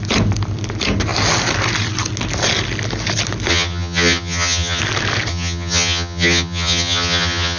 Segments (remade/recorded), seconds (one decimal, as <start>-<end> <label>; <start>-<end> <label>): 0.0-3.5 recorded; 3.5-4.8 remade; 4.8-5.3 recorded; 5.3-7.6 remade